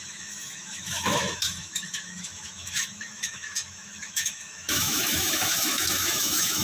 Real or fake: fake